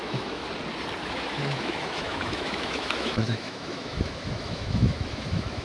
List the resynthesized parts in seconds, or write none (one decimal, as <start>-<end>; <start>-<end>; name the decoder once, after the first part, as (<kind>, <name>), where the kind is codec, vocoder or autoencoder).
0.0-0.4 (autoencoder, DAC-VAE); 1.0-5.6